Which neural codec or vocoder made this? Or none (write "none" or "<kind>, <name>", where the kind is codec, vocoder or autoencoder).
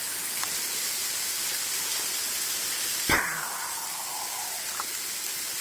none